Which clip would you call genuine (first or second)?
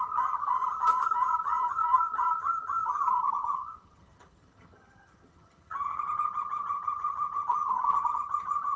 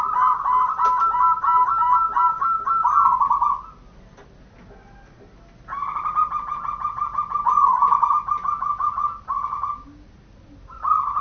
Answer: second